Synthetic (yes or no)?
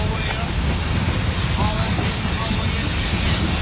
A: no